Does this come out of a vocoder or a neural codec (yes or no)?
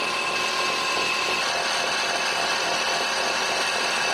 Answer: yes